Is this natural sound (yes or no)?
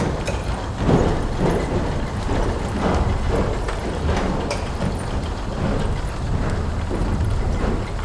yes